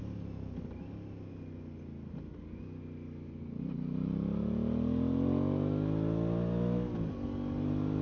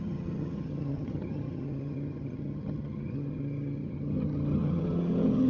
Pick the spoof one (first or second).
second